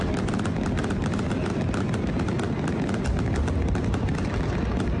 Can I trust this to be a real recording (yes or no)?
yes